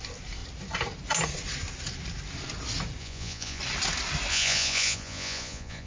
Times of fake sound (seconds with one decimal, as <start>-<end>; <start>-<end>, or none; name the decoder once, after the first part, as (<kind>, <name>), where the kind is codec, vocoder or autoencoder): 3.0-3.6 (vocoder, Vocos); 4.3-5.9